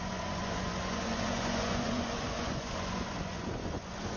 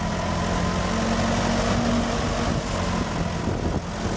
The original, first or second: second